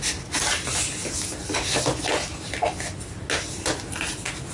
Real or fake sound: real